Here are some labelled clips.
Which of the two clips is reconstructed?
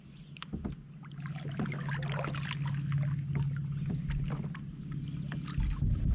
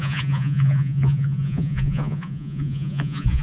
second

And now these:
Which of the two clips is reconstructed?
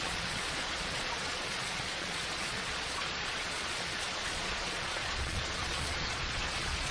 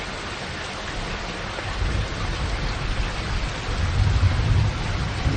first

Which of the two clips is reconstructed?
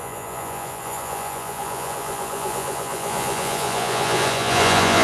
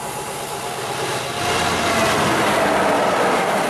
first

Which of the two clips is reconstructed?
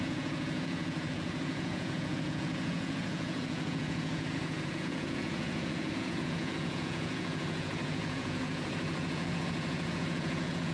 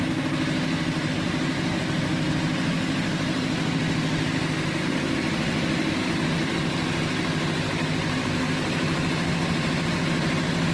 first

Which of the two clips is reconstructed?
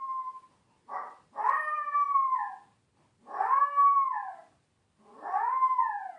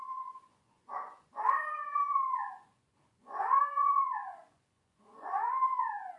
second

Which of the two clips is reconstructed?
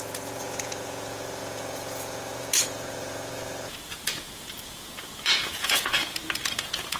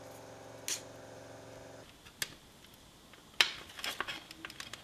first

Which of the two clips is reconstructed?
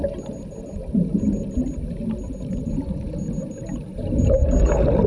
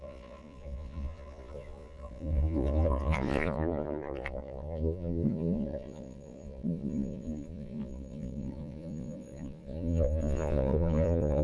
second